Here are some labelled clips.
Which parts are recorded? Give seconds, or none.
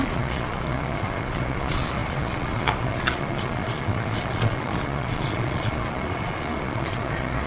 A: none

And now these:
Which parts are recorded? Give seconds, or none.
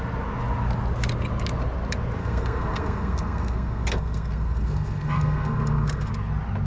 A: 0.0-2.2; 6.1-6.7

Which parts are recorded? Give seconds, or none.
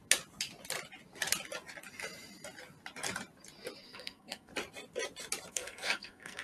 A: 0.0-3.8; 4.5-5.5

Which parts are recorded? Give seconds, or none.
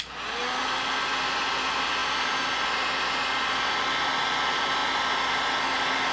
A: 0.0-6.1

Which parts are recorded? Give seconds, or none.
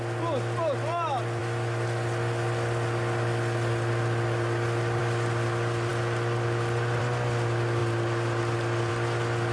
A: 0.0-7.8; 8.9-9.5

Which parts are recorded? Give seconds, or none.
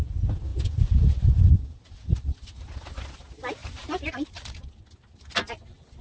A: 0.0-6.0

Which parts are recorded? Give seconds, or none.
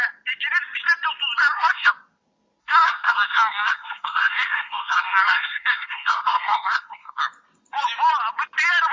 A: 0.0-1.4; 1.9-2.6; 7.2-8.9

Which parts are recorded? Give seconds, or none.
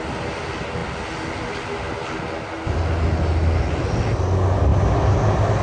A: 0.0-5.6